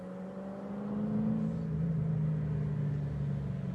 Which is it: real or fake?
real